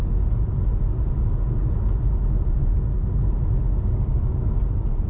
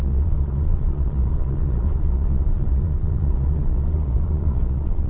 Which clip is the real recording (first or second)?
first